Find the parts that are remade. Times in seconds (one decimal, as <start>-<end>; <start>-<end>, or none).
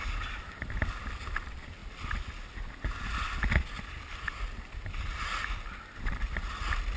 none